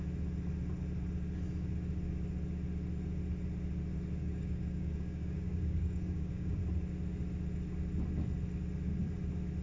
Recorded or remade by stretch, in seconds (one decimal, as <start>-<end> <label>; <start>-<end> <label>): 0.0-4.2 recorded; 4.2-6.6 remade; 6.6-9.6 recorded